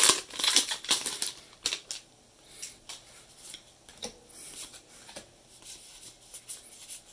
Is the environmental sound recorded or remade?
recorded